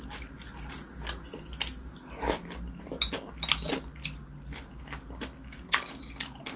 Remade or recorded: recorded